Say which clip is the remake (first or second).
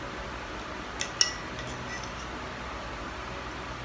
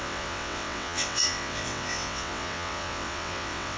second